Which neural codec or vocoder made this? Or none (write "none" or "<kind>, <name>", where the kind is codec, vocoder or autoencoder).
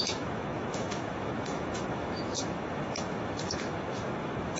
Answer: autoencoder, DAC-VAE